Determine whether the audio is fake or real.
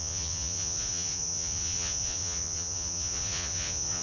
fake